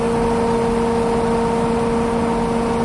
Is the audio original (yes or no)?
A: yes